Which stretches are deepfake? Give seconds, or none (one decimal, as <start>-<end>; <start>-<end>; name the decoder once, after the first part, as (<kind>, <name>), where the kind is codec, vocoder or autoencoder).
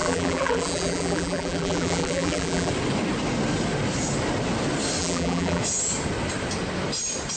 0.0-2.7 (vocoder, BigVGAN v2); 5.0-5.6